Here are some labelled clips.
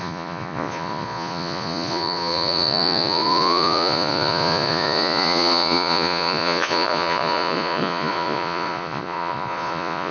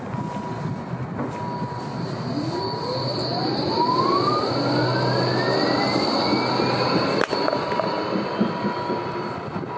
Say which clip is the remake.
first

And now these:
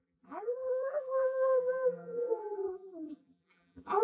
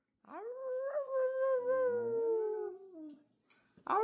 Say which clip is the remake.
first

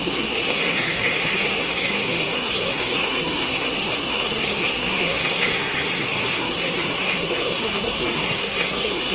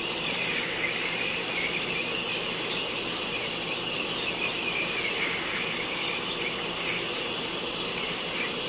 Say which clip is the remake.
first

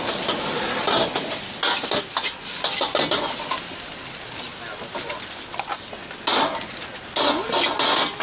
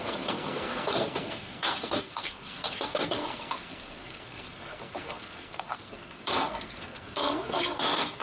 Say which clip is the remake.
second